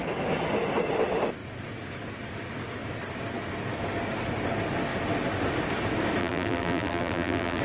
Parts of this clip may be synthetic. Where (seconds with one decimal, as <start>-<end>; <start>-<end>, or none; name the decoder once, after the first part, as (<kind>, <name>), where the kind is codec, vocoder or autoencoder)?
6.2-7.6 (vocoder, BigVGAN v2)